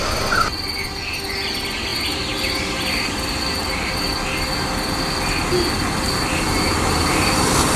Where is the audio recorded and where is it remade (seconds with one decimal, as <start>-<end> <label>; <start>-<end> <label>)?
0.0-7.8 recorded